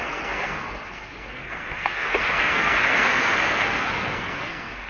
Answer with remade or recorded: remade